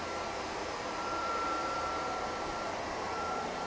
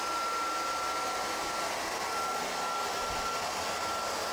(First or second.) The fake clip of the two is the first